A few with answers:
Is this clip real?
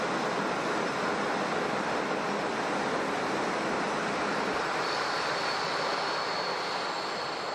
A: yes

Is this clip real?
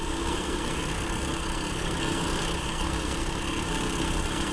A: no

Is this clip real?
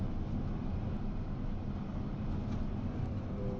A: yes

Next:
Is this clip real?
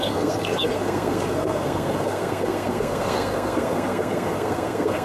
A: no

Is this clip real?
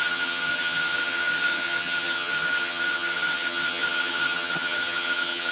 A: no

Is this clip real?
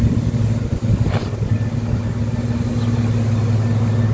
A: yes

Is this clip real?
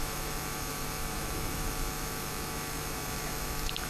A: no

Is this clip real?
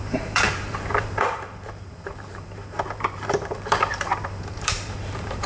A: no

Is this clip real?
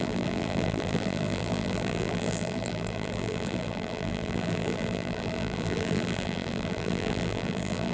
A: no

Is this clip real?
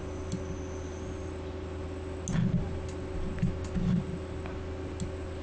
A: yes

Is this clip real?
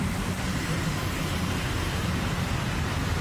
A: no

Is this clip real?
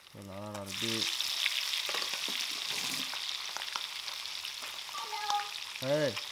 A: yes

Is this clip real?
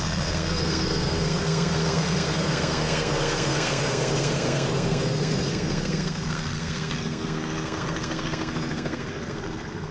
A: no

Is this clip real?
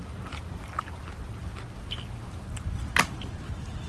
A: yes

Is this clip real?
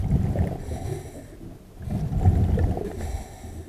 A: yes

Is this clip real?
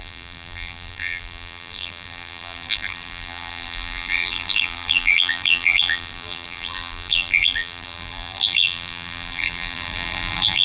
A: no